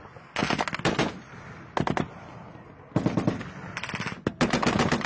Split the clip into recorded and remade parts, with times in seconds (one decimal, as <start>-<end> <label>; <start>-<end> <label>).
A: 0.0-5.1 recorded